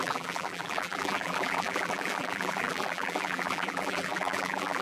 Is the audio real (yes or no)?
no